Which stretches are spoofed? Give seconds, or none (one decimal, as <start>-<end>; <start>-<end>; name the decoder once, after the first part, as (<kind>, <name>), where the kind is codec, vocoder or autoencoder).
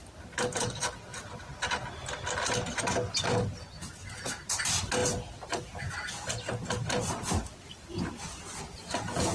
0.0-0.6 (vocoder, BigVGAN v2); 1.1-2.7; 4.0-4.6; 5.0-8.6